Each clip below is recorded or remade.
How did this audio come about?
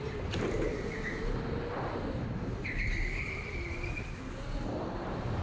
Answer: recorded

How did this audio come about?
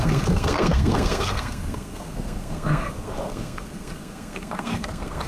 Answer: remade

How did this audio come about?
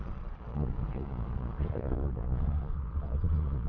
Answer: remade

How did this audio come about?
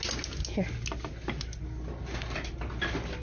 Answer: recorded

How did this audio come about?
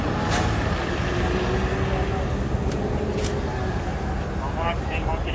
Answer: recorded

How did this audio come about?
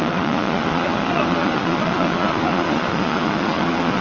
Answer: remade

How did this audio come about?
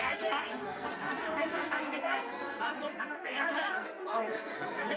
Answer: remade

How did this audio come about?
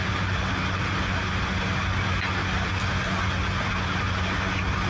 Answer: recorded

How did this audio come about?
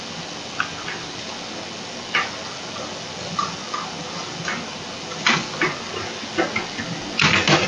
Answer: recorded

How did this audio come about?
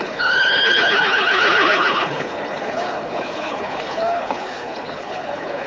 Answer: remade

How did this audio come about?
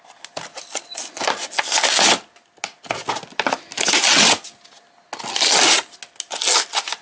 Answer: recorded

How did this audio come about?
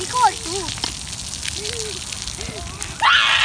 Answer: recorded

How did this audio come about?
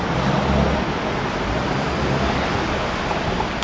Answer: recorded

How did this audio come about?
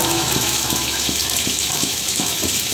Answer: remade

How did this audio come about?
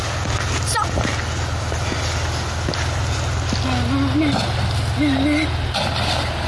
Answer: recorded